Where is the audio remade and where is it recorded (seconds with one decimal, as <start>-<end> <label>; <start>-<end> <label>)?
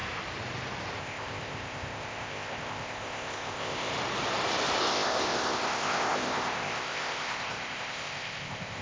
0.0-1.0 recorded; 1.0-3.9 remade; 3.9-4.8 recorded; 4.8-8.8 remade